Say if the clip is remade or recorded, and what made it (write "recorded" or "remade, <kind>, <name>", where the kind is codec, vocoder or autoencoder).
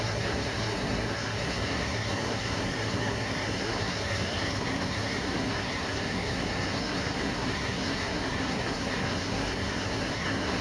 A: remade, codec, SNAC